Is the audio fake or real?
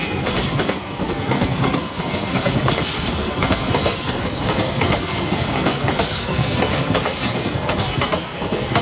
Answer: fake